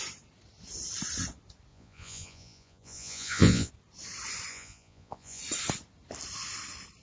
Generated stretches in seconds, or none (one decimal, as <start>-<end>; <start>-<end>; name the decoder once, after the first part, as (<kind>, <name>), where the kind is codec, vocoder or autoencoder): 1.7-3.7 (vocoder, Vocos); 4.5-5.4